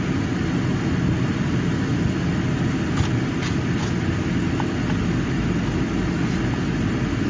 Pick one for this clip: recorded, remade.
recorded